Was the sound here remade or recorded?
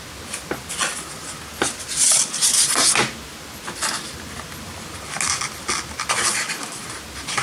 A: recorded